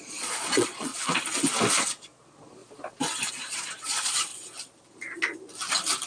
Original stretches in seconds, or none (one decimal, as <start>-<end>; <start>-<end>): 0.9-1.8; 2.6-3.3; 4.3-6.1